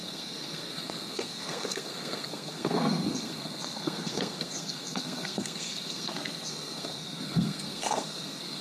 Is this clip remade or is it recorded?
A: remade